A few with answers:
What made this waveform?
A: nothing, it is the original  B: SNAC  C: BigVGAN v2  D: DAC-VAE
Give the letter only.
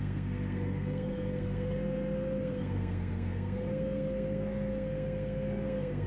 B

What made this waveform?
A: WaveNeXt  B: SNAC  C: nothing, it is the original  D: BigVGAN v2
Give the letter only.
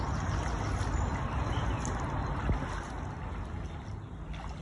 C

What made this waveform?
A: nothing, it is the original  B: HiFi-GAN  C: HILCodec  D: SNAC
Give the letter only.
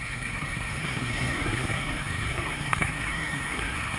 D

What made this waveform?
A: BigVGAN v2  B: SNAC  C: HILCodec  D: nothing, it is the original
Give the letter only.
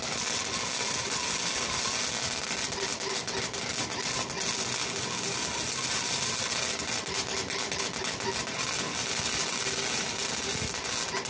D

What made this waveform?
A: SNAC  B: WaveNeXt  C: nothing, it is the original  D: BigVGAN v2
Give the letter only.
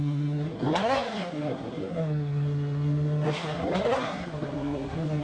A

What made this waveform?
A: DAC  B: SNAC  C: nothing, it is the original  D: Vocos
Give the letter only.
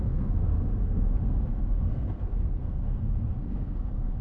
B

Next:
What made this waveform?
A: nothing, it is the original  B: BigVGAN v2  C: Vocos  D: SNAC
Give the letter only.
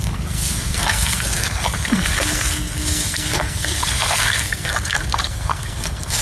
D